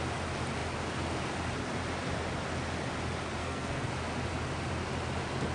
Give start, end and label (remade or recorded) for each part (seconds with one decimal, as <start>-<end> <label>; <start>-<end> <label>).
0.0-3.4 recorded; 3.4-3.9 remade; 3.9-5.5 recorded